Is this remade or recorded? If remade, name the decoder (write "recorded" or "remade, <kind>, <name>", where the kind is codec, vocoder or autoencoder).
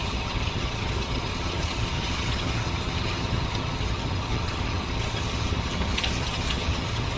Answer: remade, vocoder, HiFi-GAN